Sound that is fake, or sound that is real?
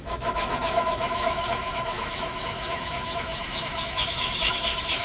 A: fake